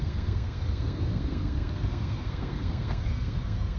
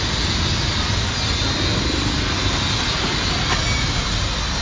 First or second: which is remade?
first